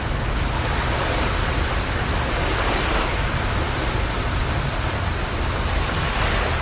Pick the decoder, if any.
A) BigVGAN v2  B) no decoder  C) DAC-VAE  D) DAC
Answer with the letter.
B